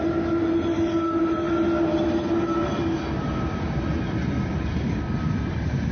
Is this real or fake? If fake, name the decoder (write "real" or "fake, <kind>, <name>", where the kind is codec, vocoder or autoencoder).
real